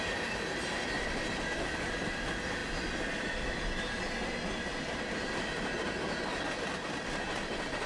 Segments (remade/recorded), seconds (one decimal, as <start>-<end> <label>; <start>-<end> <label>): 0.0-7.9 recorded